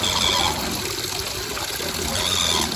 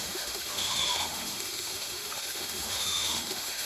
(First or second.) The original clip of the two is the first